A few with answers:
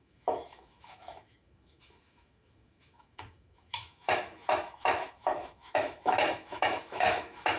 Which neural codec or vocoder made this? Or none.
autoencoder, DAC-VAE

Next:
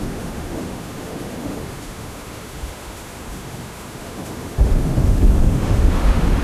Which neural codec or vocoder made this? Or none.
autoencoder, DAC-VAE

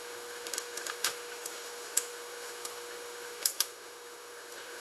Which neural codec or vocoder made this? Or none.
autoencoder, DAC-VAE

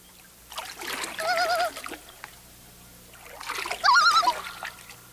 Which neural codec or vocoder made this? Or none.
none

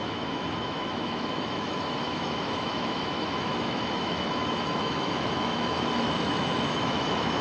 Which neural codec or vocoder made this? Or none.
autoencoder, DAC-VAE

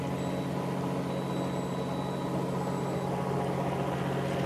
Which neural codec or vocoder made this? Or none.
none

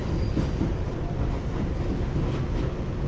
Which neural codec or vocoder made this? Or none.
none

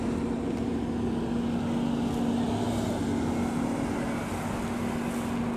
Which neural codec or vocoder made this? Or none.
none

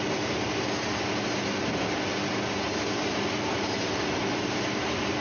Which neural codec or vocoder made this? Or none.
none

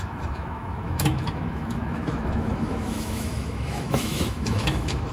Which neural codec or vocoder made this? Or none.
autoencoder, DAC-VAE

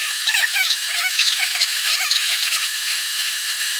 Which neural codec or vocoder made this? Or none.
autoencoder, DAC-VAE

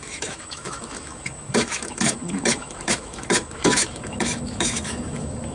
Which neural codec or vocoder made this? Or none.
autoencoder, DAC-VAE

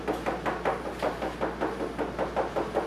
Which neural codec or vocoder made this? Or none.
none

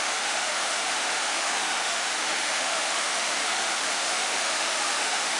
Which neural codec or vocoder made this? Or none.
autoencoder, DAC-VAE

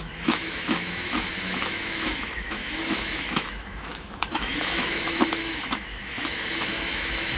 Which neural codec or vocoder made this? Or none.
autoencoder, DAC-VAE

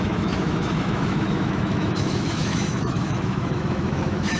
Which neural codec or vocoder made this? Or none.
autoencoder, DAC-VAE